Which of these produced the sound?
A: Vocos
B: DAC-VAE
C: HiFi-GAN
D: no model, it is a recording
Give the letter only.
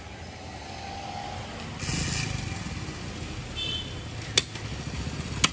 D